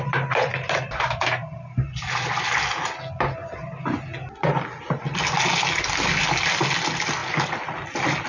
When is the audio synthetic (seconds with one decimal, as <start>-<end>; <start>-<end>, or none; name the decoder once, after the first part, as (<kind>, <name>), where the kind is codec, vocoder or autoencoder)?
none